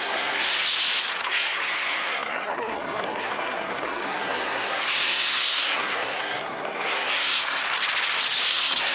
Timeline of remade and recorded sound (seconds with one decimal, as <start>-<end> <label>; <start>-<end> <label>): 0.0-0.6 remade; 0.6-1.2 recorded; 1.2-7.6 remade; 7.6-8.5 recorded; 8.5-8.9 remade